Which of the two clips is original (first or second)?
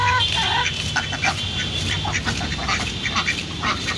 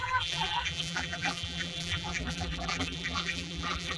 first